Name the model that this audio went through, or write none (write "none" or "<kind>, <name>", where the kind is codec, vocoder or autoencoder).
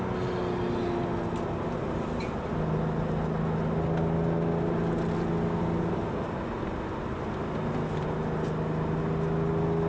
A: none